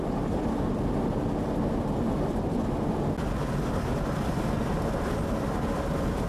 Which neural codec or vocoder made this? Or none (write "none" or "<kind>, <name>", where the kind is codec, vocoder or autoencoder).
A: none